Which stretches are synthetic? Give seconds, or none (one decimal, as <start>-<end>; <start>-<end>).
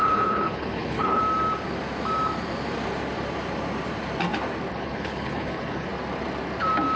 0.0-1.2; 4.7-5.9